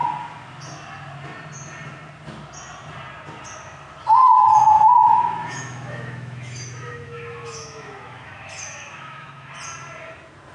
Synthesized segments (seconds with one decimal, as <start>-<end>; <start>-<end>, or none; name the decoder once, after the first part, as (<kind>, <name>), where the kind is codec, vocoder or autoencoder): 4.2-9.5 (autoencoder, DAC-VAE)